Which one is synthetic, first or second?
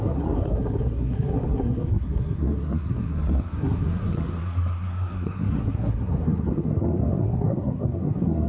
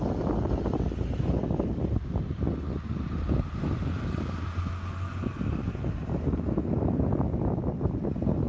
first